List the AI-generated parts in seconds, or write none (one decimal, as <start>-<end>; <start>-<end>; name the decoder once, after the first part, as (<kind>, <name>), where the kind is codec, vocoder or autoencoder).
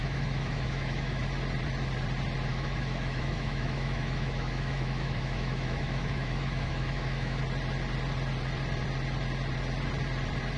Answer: 0.0-1.2 (autoencoder, DAC-VAE); 2.5-7.4